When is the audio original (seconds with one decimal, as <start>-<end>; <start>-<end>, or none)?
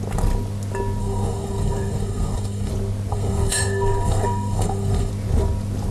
0.0-1.0; 2.7-3.1; 5.1-5.9